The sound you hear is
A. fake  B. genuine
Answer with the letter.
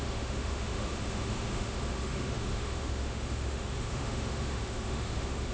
A